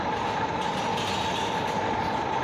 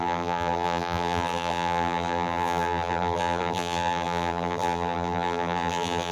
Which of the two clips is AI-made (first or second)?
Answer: second